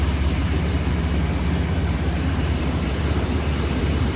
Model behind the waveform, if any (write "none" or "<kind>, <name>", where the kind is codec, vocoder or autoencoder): vocoder, BigVGAN v2